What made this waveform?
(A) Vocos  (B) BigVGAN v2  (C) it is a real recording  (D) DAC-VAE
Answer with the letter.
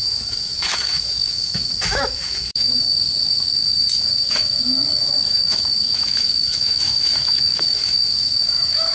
D